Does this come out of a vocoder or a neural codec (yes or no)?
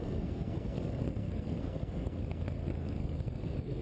yes